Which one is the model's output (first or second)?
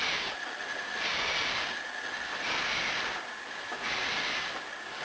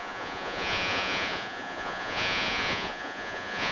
second